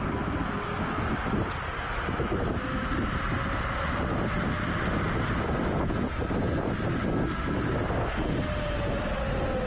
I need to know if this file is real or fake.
real